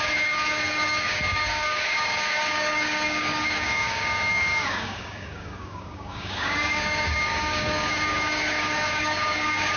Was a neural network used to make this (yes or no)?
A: yes